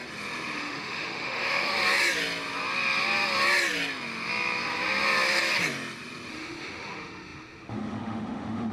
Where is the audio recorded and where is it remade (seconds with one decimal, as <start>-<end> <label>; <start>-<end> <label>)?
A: 0.0-0.6 recorded; 0.6-1.7 remade; 1.7-6.3 recorded; 6.3-8.7 remade